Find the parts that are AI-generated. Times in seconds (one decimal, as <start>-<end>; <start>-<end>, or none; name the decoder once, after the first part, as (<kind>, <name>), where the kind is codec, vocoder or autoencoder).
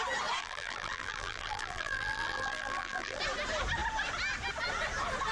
0.4-3.2 (vocoder, BigVGAN v2)